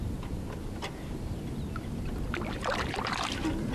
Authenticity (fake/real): fake